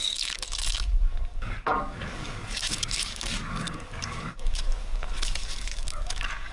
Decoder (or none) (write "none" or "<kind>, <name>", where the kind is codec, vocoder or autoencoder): codec, DAC